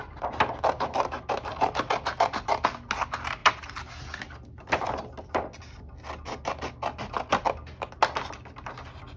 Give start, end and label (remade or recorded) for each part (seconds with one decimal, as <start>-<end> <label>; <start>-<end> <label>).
0.0-9.2 recorded